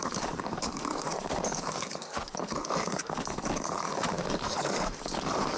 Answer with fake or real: fake